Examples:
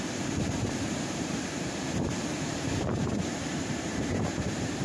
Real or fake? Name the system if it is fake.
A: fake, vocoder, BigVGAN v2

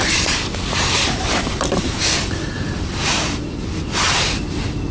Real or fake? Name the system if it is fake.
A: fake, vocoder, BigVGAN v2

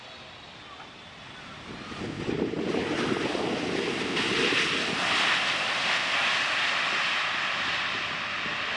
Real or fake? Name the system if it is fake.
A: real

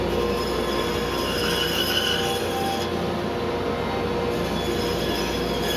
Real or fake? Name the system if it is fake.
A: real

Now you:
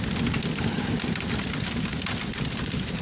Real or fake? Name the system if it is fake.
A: real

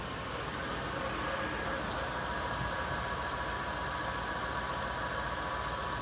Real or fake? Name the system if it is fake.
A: real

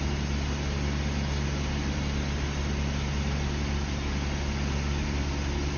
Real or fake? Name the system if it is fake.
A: real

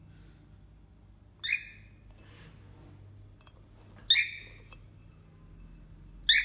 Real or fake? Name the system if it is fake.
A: real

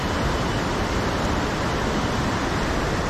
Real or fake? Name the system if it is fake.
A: fake, vocoder, BigVGAN v2